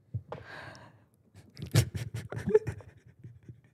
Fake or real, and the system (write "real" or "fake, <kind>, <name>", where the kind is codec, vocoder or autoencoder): real